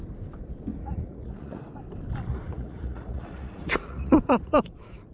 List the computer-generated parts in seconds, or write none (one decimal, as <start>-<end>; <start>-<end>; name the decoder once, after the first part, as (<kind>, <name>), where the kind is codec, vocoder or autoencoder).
0.7-1.7 (vocoder, Vocos); 2.3-5.1